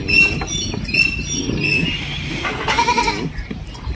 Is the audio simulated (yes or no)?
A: no